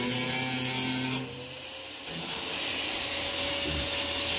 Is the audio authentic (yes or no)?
yes